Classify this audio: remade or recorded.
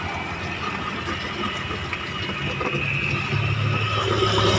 recorded